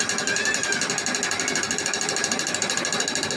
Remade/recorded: recorded